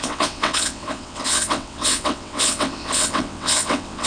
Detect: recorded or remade remade